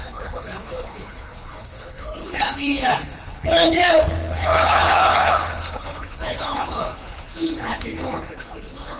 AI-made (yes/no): yes